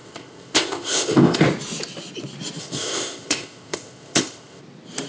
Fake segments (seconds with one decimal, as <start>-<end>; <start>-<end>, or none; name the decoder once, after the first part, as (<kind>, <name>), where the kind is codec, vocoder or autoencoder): 0.0-1.4 (codec, ZipCodec); 2.6-4.6